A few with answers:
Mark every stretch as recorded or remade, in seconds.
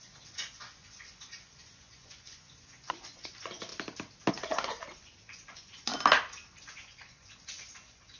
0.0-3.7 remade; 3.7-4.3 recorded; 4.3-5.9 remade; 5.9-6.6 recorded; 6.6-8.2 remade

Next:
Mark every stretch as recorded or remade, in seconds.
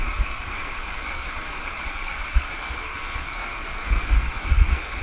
0.0-5.0 remade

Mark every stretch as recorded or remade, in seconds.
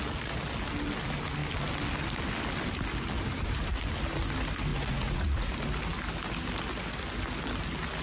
0.0-4.7 recorded; 4.7-5.5 remade; 5.5-8.0 recorded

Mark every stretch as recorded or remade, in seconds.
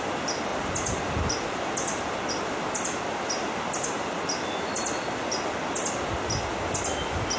0.0-7.4 recorded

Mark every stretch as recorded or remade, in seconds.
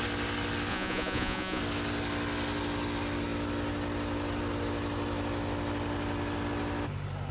0.0-0.7 recorded; 0.7-1.6 remade; 1.6-7.3 recorded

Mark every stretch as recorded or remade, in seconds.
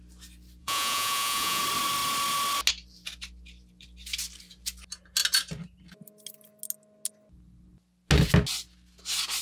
0.0-0.6 recorded; 0.6-1.6 remade; 1.6-9.4 recorded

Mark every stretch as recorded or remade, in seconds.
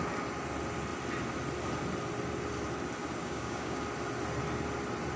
0.0-3.2 recorded; 3.2-3.8 remade; 3.8-5.2 recorded